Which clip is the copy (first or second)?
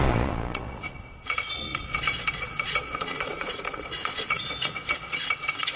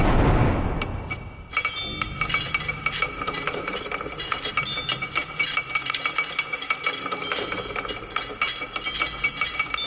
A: first